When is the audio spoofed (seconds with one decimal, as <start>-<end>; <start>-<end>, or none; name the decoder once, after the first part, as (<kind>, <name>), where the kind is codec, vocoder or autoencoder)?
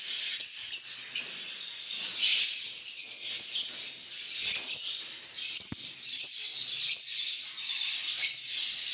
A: none